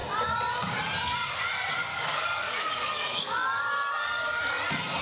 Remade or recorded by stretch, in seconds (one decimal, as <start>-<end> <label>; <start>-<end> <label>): 0.0-1.9 recorded; 1.9-3.6 remade; 3.6-5.0 recorded